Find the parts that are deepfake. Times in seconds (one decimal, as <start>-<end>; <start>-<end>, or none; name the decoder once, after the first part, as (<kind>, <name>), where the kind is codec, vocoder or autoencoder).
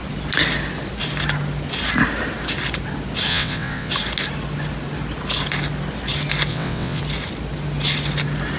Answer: 3.3-3.9 (vocoder, WaveNeXt); 6.5-7.0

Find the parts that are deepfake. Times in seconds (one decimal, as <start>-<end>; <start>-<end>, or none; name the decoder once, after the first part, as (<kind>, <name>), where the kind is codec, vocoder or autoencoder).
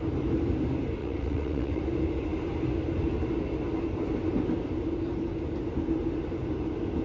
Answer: 1.0-1.8 (vocoder, WaveNeXt)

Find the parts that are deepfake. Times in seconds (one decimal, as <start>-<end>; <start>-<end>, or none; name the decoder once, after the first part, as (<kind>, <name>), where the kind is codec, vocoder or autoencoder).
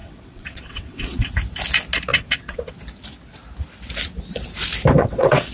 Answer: 0.0-1.3 (vocoder, WaveNeXt); 2.1-2.7; 5.0-5.5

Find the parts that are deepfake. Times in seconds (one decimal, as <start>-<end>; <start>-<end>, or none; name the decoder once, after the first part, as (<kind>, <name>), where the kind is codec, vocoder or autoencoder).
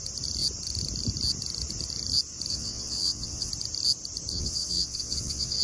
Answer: 2.5-3.5 (vocoder, WaveNeXt); 4.3-5.6